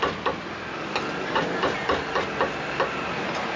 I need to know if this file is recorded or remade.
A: recorded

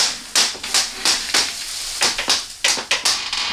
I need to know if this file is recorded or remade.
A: recorded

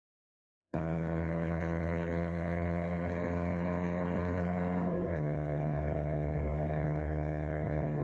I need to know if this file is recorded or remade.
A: remade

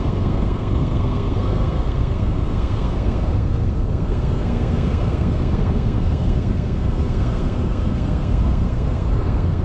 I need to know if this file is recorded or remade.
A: remade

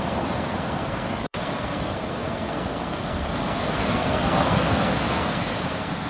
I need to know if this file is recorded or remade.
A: remade